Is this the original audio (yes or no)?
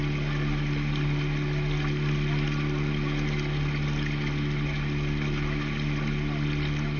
yes